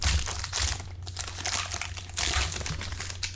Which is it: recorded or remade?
recorded